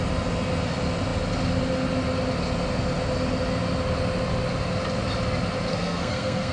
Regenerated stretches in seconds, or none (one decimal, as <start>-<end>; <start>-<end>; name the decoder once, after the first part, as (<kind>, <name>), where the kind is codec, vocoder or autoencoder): 5.7-6.5 (codec, SNAC)